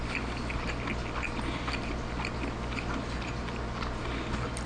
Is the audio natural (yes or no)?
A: yes